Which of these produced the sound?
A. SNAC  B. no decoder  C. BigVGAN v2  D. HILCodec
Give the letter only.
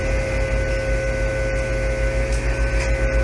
B